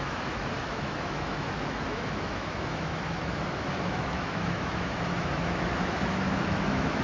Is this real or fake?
fake